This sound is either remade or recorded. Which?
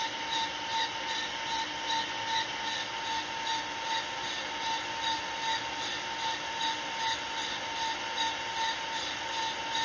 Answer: recorded